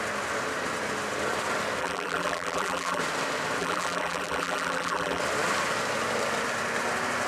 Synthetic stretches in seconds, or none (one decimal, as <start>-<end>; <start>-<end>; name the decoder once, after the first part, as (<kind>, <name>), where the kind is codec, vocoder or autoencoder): 1.8-3.0 (vocoder, BigVGAN v2); 3.6-5.2